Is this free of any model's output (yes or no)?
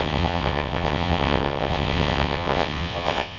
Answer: no